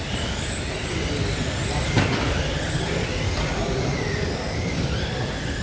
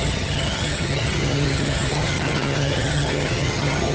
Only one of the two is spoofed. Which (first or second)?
second